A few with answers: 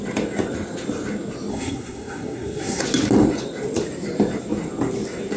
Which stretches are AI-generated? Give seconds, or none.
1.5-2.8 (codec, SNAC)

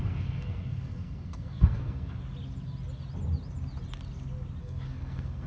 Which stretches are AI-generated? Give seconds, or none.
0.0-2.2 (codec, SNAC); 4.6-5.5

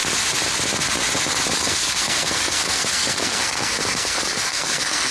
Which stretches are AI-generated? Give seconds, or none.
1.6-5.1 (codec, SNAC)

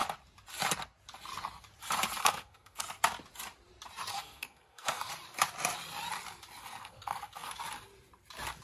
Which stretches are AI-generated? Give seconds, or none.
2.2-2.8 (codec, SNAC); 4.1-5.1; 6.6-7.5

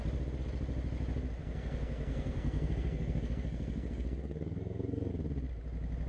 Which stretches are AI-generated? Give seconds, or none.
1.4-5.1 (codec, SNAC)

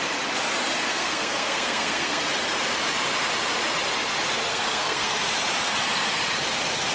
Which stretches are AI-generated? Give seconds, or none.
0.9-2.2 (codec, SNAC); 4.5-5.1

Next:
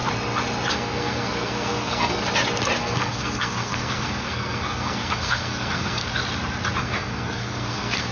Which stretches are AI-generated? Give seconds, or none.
0.7-2.2 (codec, SNAC); 2.8-6.1; 6.8-8.1

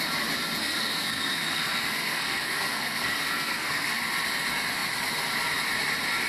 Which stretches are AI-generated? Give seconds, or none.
0.6-4.0 (codec, SNAC)